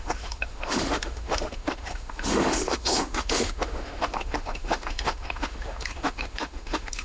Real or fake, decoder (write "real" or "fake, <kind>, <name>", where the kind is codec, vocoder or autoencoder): fake, autoencoder, DAC-VAE